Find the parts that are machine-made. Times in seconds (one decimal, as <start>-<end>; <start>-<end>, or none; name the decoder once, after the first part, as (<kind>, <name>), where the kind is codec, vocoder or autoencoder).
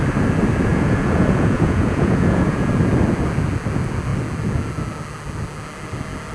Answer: 0.7-2.7 (vocoder, Vocos)